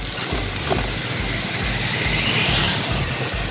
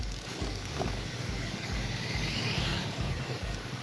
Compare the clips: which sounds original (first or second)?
first